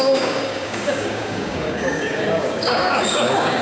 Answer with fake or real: fake